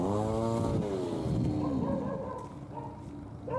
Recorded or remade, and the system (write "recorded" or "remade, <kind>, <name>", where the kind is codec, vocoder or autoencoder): recorded